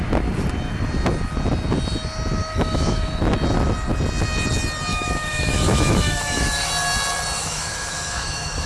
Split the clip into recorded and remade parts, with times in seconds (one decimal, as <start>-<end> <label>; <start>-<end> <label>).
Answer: 0.0-2.4 recorded; 2.4-3.2 remade; 3.2-4.9 recorded; 4.9-6.7 remade; 6.7-7.4 recorded; 7.4-8.7 remade